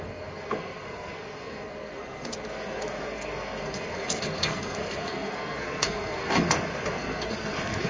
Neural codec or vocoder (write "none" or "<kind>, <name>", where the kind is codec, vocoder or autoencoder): codec, SNAC